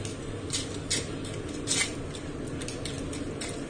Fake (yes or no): no